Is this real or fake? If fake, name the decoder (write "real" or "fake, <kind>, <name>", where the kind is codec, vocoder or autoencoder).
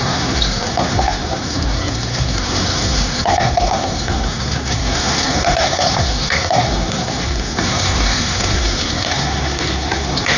fake, codec, SNAC